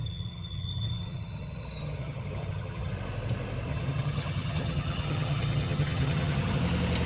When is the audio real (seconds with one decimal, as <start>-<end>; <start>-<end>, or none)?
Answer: 2.9-3.7; 6.6-7.1